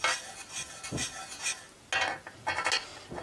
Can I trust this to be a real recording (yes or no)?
yes